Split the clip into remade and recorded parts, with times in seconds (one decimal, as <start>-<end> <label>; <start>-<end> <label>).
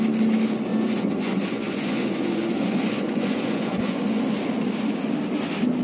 0.0-0.7 recorded; 0.7-4.2 remade; 4.2-5.8 recorded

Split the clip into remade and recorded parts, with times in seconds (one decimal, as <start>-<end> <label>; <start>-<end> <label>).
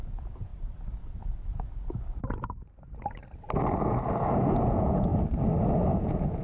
0.0-0.5 remade; 0.5-4.3 recorded; 4.3-5.1 remade; 5.1-5.9 recorded; 5.9-6.4 remade